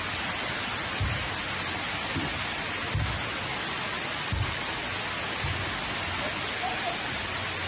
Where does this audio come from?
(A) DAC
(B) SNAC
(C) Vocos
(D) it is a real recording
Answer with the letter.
D